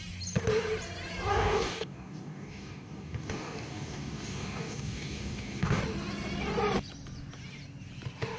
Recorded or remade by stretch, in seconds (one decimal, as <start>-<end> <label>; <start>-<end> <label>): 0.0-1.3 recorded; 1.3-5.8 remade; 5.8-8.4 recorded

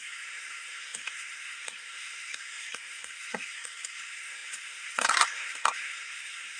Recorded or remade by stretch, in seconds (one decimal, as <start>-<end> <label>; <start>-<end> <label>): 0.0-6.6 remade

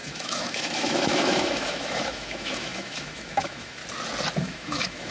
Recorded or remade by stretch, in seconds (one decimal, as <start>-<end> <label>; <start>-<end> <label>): 0.0-3.8 remade; 3.8-4.4 recorded; 4.4-5.1 remade

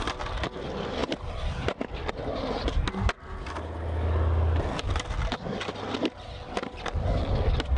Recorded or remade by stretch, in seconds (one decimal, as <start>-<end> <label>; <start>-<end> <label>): 0.0-7.8 recorded